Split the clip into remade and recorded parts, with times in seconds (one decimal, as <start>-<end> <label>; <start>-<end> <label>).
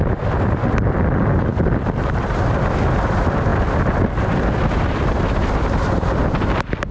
0.0-6.9 recorded